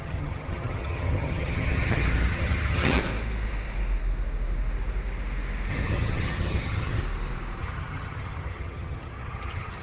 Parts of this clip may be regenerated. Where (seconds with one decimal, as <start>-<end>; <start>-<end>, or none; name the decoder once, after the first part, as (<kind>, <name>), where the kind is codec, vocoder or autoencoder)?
0.0-3.0 (vocoder, HiFi-GAN); 5.7-7.0; 7.6-9.8